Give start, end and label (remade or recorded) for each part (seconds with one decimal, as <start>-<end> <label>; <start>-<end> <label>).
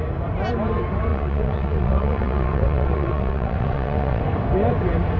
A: 0.0-1.1 recorded; 1.1-4.2 remade; 4.2-5.2 recorded